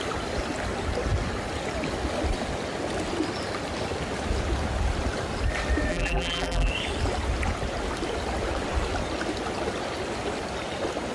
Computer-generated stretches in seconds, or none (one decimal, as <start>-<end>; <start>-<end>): 5.9-6.7